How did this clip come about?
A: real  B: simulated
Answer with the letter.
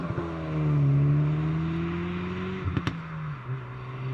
A